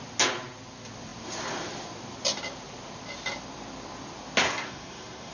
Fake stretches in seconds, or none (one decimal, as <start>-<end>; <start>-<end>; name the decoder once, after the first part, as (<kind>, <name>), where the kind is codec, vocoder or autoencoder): 4.4-5.3 (codec, SNAC)